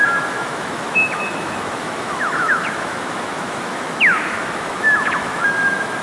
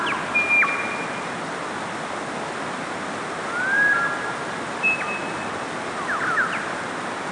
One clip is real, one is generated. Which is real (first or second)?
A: second